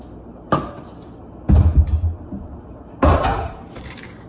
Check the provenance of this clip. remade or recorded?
recorded